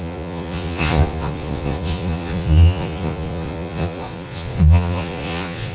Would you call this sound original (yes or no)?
no